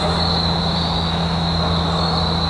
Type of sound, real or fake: real